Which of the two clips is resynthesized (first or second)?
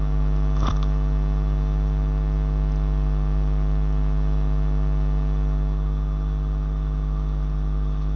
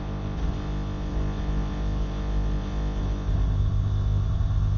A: second